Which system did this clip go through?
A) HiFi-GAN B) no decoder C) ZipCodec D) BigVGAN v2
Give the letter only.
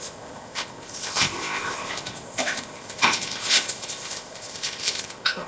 C